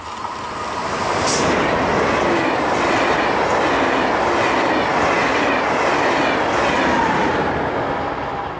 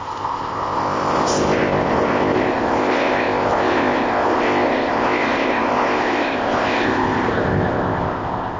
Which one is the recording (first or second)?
first